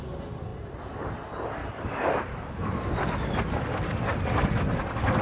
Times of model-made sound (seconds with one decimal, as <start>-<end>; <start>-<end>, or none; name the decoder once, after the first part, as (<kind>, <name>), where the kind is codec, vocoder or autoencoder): none